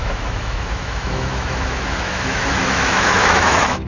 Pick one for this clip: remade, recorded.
remade